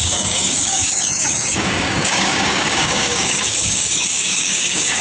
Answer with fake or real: fake